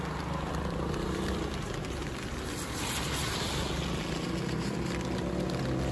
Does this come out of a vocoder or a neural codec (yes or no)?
no